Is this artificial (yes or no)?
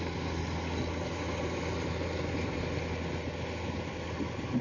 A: no